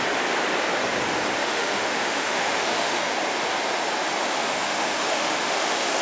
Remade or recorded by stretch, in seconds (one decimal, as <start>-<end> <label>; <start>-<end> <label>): 0.0-1.4 recorded; 1.4-3.1 remade; 3.1-4.4 recorded; 4.4-6.0 remade